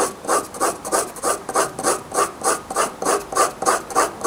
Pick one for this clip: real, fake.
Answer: fake